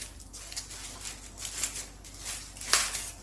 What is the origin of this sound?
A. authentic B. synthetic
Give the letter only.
A